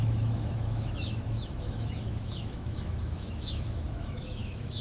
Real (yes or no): no